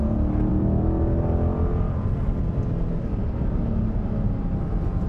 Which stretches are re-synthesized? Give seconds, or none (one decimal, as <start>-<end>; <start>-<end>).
0.5-3.6